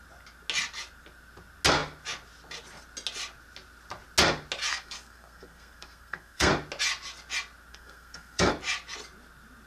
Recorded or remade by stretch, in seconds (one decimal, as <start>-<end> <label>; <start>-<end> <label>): 0.0-4.7 recorded; 4.7-6.5 remade; 6.5-7.7 recorded; 7.7-8.5 remade; 8.5-9.7 recorded